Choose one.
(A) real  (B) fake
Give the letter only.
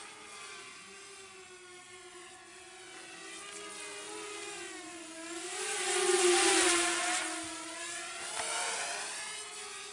A